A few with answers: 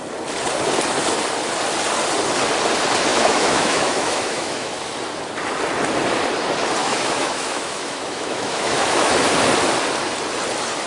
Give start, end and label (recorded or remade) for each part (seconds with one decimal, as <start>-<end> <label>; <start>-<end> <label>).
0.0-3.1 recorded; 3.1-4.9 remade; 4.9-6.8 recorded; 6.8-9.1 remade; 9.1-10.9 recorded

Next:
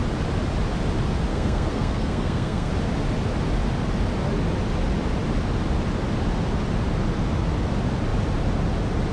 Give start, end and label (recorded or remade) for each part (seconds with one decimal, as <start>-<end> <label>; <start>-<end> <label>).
0.0-1.3 recorded; 1.3-2.7 remade; 2.7-9.1 recorded

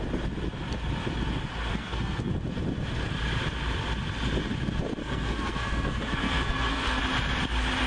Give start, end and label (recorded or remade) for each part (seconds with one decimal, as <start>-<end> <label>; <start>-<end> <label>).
0.0-1.7 recorded; 1.7-2.3 remade; 2.3-5.0 recorded; 5.0-7.0 remade; 7.0-7.9 recorded